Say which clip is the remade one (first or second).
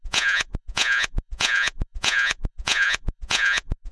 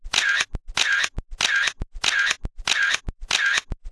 first